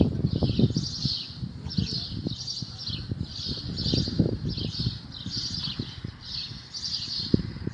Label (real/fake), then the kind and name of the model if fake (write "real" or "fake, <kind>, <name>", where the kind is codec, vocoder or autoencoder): real